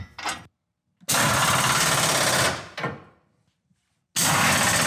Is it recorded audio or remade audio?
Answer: recorded